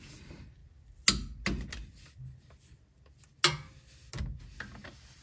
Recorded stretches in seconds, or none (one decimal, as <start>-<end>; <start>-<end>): 0.0-5.2